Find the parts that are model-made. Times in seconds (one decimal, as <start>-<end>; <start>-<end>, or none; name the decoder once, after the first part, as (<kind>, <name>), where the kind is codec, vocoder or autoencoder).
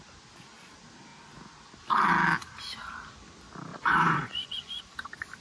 3.7-4.8 (vocoder, Vocos)